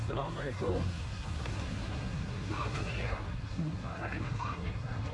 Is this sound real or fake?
fake